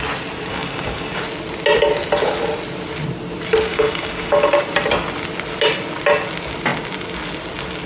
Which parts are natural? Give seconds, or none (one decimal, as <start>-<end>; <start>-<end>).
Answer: 0.0-0.5; 1.2-3.7; 4.5-7.9